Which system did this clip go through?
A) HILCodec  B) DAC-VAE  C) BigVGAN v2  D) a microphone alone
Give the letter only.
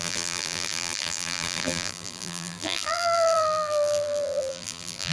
C